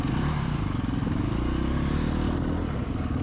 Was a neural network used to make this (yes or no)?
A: no